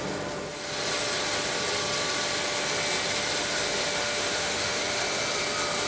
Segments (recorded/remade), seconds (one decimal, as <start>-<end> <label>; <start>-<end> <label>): 0.0-4.0 recorded; 4.0-4.8 remade; 4.8-5.9 recorded